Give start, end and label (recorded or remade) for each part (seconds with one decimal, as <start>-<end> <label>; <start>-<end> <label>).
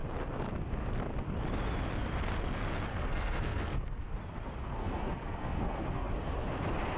0.0-2.9 recorded; 2.9-4.1 remade; 4.1-4.8 recorded; 4.8-6.1 remade; 6.1-7.0 recorded